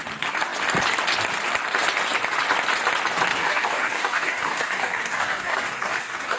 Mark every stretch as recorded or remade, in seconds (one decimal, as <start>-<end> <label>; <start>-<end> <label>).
0.0-3.3 recorded; 3.3-6.4 remade